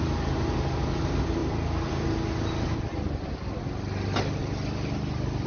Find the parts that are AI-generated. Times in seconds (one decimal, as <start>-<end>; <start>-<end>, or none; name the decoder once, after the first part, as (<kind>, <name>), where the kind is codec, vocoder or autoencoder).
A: none